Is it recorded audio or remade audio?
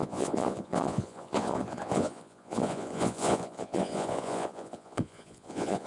remade